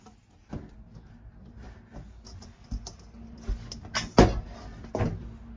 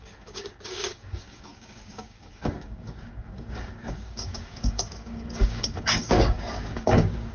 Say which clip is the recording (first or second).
first